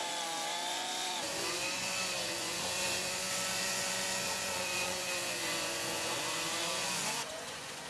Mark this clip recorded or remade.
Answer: remade